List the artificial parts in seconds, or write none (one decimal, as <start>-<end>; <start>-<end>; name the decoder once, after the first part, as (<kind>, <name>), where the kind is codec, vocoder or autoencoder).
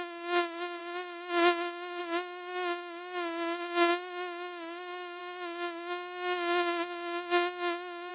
5.2-8.1 (autoencoder, DAC-VAE)